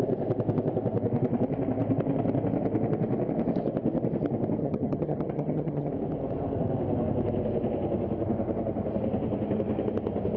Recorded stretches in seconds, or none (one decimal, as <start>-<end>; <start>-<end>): 0.0-4.6; 5.9-10.4